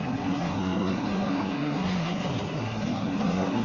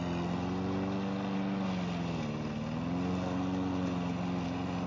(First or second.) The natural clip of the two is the second